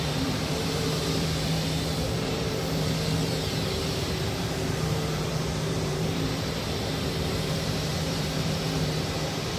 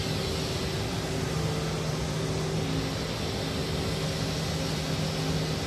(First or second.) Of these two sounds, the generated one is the first